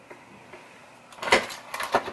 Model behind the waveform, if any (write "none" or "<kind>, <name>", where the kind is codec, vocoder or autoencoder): none